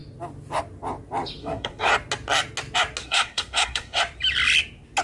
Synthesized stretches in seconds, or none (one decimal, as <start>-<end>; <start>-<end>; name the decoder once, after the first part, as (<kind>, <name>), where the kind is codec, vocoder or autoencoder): 1.4-1.9 (codec, SNAC); 3.0-4.0